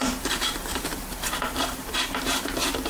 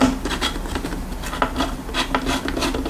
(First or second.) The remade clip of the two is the first